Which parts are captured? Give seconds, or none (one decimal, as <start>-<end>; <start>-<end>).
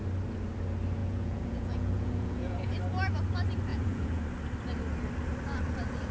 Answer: 0.0-1.0; 2.7-3.7; 4.2-6.1